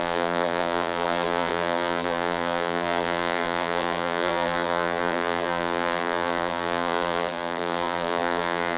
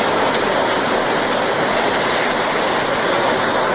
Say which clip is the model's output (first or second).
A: first